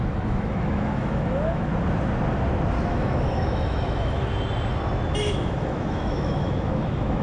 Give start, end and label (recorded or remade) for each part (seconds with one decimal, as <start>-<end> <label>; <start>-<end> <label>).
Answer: 0.0-1.7 remade; 1.7-2.9 recorded; 2.9-4.3 remade; 4.3-5.2 recorded; 5.2-7.2 remade

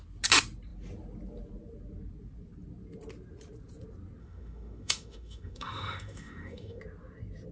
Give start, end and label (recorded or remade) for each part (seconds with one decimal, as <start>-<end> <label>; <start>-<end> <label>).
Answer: 0.0-4.2 recorded; 4.2-6.8 remade; 6.8-7.5 recorded

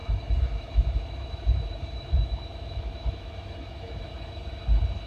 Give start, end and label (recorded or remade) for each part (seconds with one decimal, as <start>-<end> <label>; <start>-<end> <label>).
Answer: 0.0-4.1 remade; 4.1-5.1 recorded

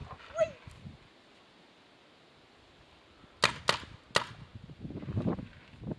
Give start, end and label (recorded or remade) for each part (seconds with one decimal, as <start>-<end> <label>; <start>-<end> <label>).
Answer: 0.0-6.0 recorded

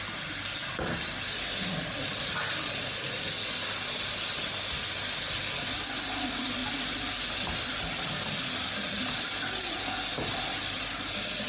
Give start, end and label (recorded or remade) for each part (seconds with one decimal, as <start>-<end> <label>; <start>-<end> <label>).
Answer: 0.0-11.5 recorded

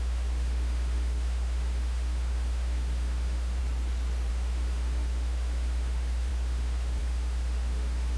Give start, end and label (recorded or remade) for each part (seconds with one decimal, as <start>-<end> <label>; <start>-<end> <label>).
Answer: 0.0-3.6 remade; 3.6-4.3 recorded; 4.3-8.2 remade

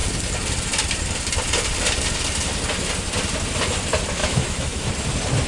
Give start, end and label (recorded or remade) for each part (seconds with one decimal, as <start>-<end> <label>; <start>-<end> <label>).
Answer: 0.0-4.2 recorded; 4.2-4.9 remade; 4.9-5.5 recorded